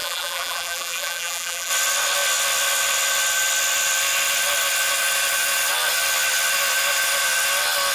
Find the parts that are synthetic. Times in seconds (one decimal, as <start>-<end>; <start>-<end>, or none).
0.0-1.7